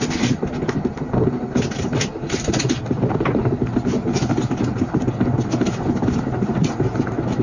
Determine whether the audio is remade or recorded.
recorded